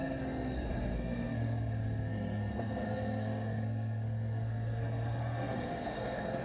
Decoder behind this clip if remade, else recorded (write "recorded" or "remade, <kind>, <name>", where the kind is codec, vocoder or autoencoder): remade, codec, SNAC